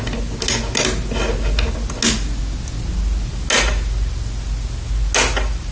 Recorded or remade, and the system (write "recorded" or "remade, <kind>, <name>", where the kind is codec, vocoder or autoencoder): recorded